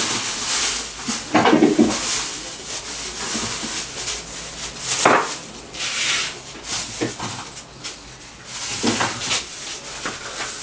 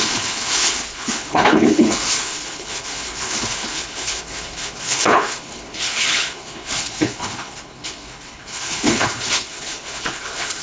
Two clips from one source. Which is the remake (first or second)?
second